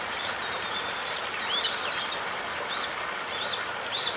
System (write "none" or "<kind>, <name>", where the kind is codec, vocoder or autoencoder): none